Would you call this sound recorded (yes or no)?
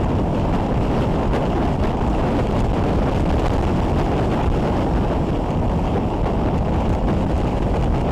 yes